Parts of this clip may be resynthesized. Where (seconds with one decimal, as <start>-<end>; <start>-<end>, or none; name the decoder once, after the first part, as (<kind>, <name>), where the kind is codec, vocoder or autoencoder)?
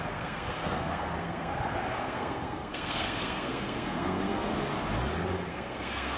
0.0-1.5 (codec, SNAC); 2.0-4.5; 5.5-6.2